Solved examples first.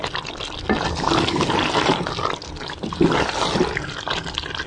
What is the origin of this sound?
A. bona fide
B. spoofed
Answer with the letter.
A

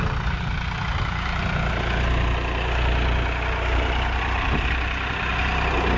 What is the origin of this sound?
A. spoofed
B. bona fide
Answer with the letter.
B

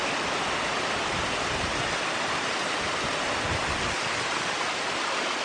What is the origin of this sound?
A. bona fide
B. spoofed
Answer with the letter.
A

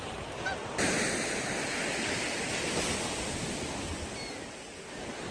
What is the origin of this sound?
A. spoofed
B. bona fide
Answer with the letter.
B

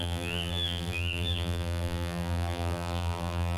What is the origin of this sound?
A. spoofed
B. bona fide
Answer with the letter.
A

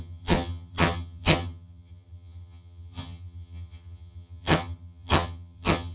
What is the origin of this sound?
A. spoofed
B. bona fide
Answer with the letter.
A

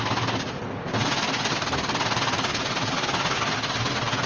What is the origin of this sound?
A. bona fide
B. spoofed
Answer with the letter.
A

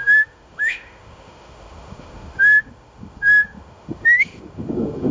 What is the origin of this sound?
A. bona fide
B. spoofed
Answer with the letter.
B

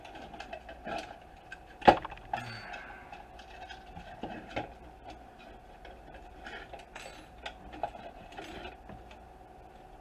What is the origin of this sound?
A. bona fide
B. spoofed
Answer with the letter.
A